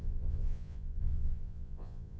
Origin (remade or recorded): remade